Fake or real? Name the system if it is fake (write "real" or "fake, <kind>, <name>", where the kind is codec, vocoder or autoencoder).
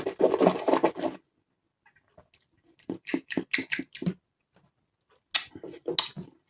real